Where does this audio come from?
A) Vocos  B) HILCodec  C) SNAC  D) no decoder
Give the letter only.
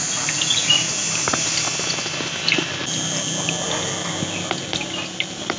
D